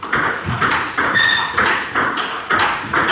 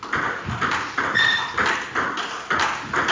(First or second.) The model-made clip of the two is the first